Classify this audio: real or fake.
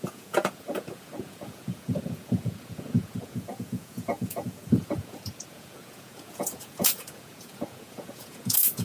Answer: fake